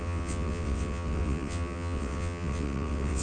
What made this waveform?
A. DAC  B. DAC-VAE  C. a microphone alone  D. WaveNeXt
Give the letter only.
D